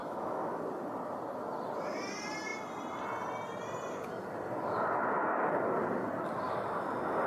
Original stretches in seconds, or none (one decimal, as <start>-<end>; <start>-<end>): 0.6-7.3